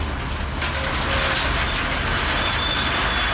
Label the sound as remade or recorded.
recorded